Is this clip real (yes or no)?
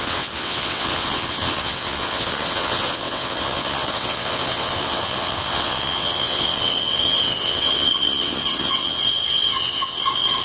no